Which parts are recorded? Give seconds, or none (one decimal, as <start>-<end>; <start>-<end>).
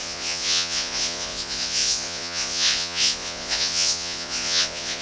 none